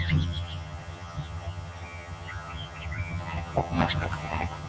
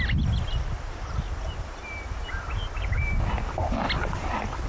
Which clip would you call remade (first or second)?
first